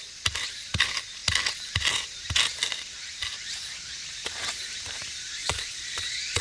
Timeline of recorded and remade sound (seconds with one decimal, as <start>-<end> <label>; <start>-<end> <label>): 0.0-5.4 recorded; 5.4-6.4 remade